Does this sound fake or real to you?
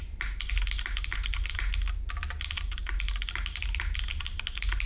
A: real